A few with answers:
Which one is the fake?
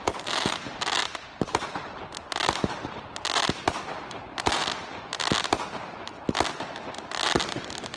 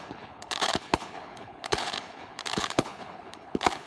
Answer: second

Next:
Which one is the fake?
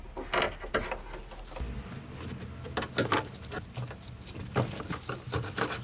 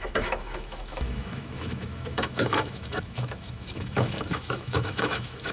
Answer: second